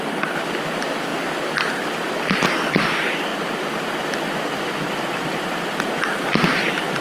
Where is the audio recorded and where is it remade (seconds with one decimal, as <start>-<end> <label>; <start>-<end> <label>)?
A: 0.0-1.1 remade; 1.1-1.7 recorded; 1.7-3.3 remade; 3.3-4.5 recorded; 4.5-7.0 remade